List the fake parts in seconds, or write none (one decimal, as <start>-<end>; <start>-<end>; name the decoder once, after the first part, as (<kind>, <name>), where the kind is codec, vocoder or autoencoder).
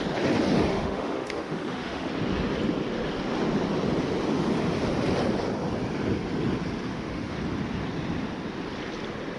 0.7-2.1 (autoencoder, DAC-VAE); 6.9-7.4